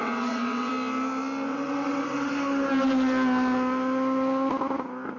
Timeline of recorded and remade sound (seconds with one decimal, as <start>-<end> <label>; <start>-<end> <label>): 0.0-0.7 remade; 0.7-1.5 recorded; 1.5-2.3 remade; 2.3-5.2 recorded